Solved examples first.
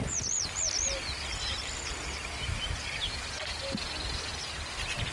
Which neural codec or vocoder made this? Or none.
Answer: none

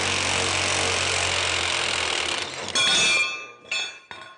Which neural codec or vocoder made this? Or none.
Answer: none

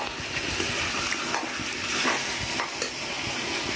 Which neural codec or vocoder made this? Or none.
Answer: none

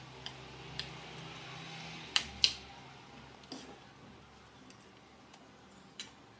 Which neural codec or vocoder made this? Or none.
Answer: none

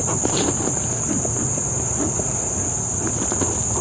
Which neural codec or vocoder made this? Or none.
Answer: none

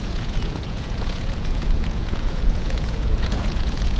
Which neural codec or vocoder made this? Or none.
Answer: vocoder, Vocos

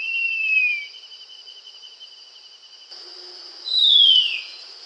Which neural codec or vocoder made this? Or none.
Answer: none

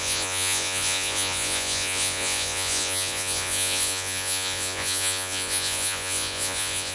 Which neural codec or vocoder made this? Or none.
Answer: vocoder, Vocos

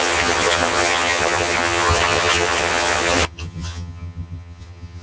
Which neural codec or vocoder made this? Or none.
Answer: vocoder, HiFi-GAN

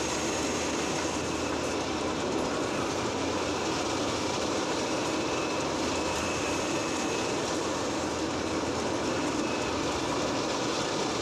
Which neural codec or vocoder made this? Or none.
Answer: vocoder, BigVGAN v2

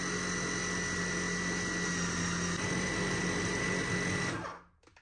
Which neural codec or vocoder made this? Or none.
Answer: none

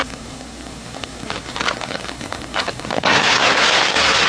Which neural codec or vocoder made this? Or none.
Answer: codec, SNAC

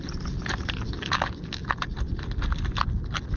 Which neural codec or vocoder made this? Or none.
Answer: none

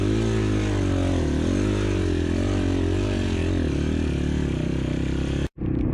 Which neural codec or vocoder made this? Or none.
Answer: none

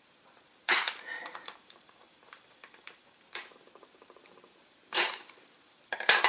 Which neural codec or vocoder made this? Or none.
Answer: vocoder, BigVGAN v2